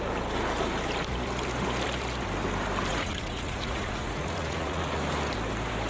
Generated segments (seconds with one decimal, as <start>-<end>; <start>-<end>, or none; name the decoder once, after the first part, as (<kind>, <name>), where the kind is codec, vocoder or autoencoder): 2.9-5.0 (vocoder, Vocos)